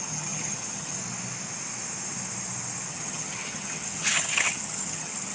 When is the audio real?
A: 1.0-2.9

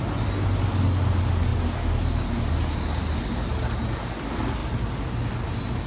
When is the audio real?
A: 0.0-5.9

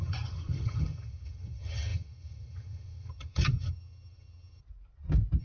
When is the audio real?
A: 4.6-5.4

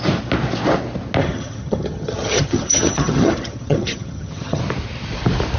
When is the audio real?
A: 0.0-1.2; 4.6-5.6